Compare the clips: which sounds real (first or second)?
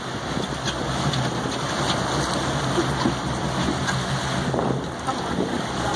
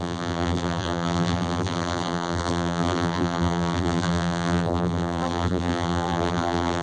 first